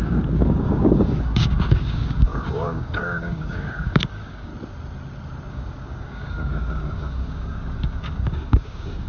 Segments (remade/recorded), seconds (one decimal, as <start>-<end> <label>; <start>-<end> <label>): 0.0-4.5 remade; 4.5-5.5 recorded; 5.5-9.1 remade